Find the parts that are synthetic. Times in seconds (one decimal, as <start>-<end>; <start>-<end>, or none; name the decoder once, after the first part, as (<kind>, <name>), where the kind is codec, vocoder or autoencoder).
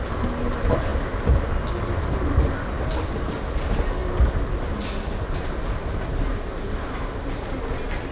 none